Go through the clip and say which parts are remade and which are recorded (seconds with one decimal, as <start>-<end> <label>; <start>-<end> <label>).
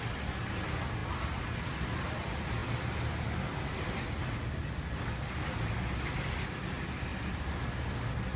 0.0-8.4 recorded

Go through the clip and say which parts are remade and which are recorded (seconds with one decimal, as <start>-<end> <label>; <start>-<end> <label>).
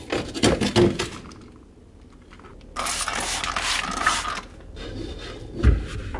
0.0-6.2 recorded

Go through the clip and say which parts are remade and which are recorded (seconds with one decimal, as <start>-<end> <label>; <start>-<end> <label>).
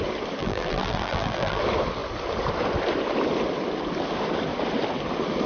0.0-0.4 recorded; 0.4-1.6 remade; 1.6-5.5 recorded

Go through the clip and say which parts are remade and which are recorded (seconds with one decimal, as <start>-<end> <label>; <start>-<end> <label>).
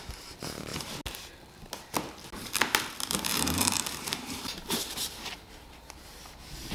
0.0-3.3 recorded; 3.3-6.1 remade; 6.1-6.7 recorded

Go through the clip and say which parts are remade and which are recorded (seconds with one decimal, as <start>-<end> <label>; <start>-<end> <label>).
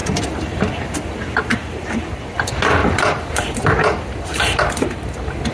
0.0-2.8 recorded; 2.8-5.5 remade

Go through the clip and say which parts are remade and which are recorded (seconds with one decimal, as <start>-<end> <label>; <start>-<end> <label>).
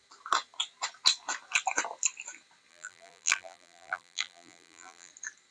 0.0-2.7 recorded; 2.7-5.1 remade; 5.1-5.5 recorded